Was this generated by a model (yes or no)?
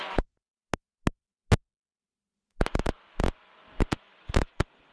no